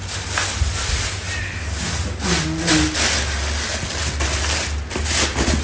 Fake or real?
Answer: real